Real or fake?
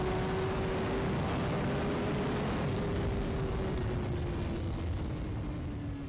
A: real